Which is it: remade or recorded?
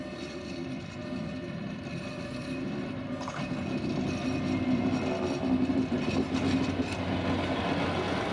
recorded